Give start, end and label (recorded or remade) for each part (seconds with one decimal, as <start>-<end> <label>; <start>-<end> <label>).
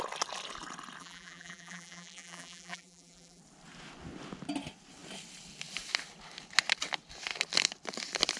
0.0-1.0 recorded; 1.0-3.4 remade; 3.4-8.4 recorded